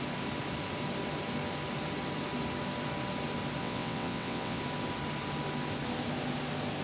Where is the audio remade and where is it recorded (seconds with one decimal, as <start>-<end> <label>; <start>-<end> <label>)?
0.0-3.6 recorded; 3.6-4.6 remade; 4.6-6.8 recorded